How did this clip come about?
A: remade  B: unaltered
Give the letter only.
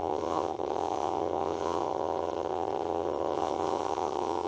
A